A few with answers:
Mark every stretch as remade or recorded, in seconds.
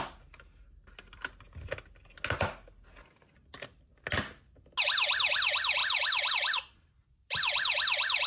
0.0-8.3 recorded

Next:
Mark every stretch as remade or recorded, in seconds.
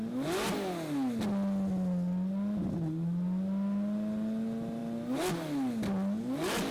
0.0-6.7 recorded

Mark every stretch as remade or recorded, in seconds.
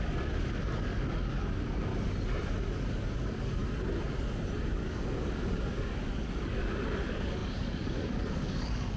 0.0-1.9 remade; 1.9-2.6 recorded; 2.6-3.6 remade; 3.6-4.7 recorded; 4.7-9.0 remade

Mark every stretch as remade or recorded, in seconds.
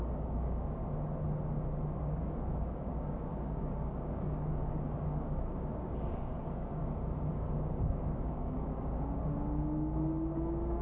0.0-0.8 remade; 0.8-2.0 recorded; 2.0-10.8 remade